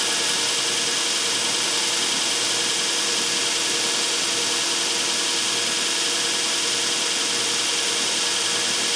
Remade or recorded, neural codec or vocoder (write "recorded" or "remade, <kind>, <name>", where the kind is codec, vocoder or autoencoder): recorded